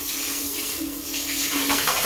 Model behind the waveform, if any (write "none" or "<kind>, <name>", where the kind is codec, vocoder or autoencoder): codec, SNAC